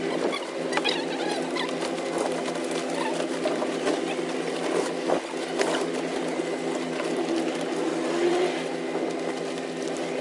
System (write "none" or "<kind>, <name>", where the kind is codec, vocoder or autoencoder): none